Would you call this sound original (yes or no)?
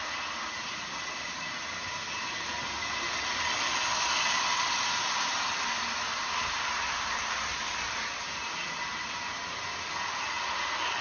yes